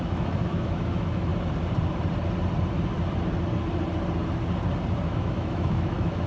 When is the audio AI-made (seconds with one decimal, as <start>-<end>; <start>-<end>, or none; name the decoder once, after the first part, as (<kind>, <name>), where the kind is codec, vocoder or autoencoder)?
0.0-1.3 (autoencoder, DAC-VAE); 5.1-6.3